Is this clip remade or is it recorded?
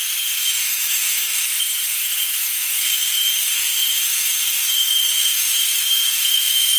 remade